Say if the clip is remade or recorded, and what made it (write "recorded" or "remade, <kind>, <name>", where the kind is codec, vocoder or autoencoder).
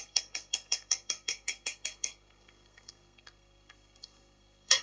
remade, codec, SNAC